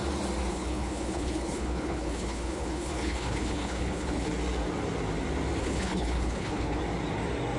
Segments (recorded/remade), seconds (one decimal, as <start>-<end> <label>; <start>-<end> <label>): 0.0-0.5 recorded; 0.5-4.3 remade; 4.3-5.6 recorded; 5.6-6.8 remade; 6.8-7.6 recorded